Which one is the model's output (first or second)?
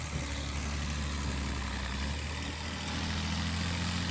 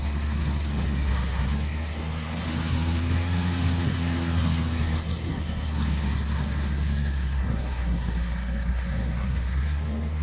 second